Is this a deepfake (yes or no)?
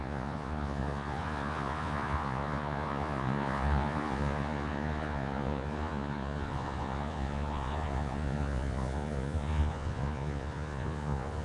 yes